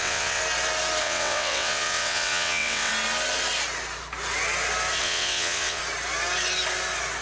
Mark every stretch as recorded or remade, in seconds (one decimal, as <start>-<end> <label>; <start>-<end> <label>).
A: 0.0-0.4 remade; 0.4-1.0 recorded; 1.0-2.9 remade; 2.9-5.0 recorded; 5.0-5.8 remade; 5.8-7.2 recorded